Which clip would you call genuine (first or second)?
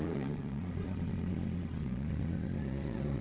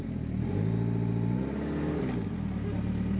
second